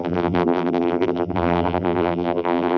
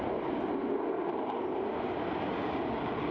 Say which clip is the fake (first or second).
first